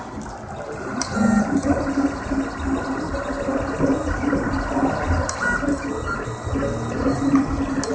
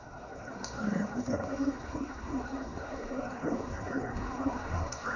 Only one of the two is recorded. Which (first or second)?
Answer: first